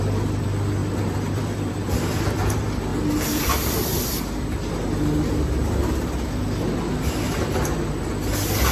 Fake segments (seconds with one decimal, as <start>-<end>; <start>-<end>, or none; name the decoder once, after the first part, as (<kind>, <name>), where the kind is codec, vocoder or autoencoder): 0.0-2.9 (vocoder, BigVGAN v2); 3.4-3.9